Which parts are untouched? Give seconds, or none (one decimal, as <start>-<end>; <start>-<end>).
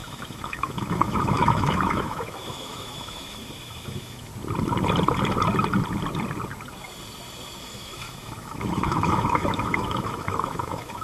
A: 4.3-7.6